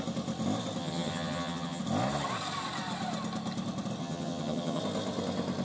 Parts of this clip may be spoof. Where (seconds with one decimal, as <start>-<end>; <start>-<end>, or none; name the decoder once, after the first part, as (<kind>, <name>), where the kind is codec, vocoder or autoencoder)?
0.8-1.8 (vocoder, HiFi-GAN); 4.0-4.8